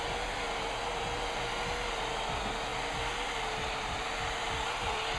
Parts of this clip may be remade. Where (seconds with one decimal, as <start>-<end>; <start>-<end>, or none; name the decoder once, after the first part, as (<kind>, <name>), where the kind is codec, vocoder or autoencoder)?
none